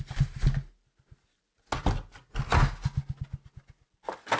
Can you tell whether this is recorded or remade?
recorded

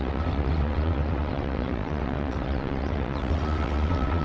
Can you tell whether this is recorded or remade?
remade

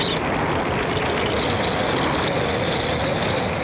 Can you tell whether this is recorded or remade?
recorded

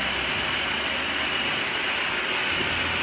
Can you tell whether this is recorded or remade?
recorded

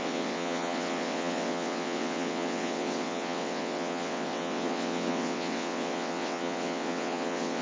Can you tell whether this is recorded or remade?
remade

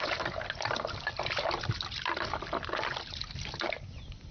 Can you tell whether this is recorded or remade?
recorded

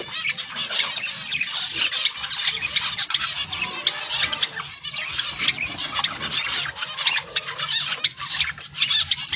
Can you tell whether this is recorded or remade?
recorded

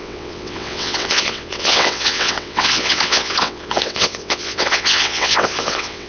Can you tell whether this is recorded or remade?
remade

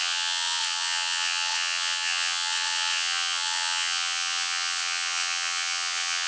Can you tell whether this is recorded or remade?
remade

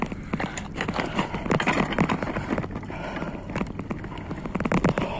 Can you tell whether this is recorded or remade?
recorded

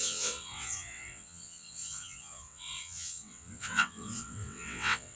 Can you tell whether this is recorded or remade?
remade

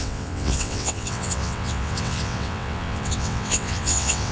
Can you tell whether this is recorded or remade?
remade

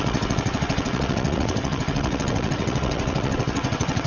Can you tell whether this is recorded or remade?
remade